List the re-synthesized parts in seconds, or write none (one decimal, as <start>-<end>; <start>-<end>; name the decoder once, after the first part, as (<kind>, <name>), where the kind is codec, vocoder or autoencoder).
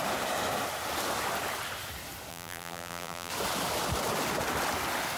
2.3-3.3 (vocoder, BigVGAN v2)